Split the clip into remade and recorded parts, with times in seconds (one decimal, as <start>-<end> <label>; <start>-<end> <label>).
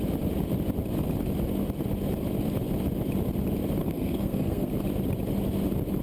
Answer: 0.0-3.8 recorded; 3.8-4.7 remade; 4.7-6.0 recorded